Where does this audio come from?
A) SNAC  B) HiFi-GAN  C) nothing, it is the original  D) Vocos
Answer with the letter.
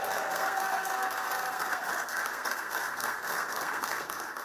A